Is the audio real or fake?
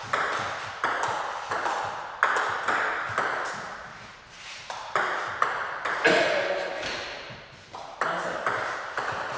real